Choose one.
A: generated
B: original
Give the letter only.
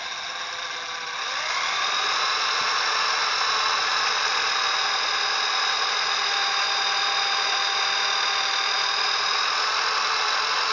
B